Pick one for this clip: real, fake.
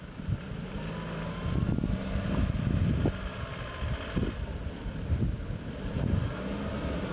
real